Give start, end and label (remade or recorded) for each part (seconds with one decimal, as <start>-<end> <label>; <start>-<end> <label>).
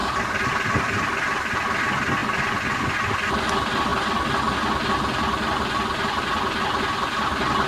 0.0-7.7 recorded